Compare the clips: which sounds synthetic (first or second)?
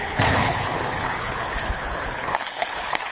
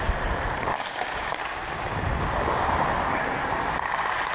first